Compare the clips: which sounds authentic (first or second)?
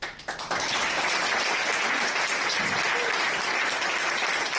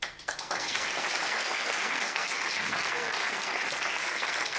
first